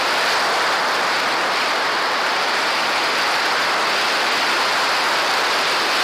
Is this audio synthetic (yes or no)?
no